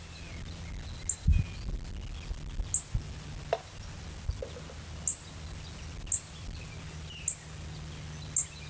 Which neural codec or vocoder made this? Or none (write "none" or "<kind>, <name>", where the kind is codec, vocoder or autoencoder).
none